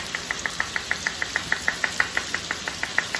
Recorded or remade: recorded